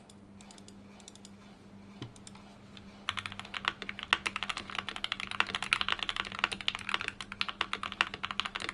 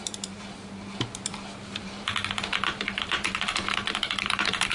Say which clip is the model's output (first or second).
second